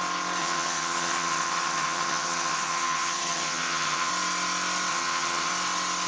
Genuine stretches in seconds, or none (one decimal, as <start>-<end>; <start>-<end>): 0.0-0.4; 4.1-4.9; 5.5-6.1